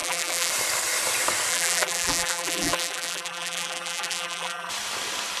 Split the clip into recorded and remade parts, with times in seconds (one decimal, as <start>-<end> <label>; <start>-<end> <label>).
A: 0.0-0.5 remade; 0.5-1.5 recorded; 1.5-4.7 remade; 4.7-5.4 recorded